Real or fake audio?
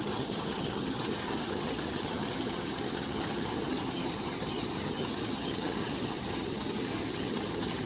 fake